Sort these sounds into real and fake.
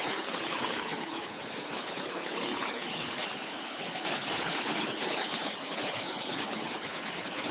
fake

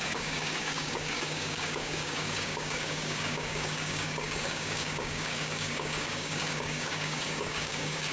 fake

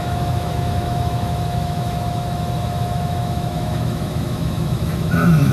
fake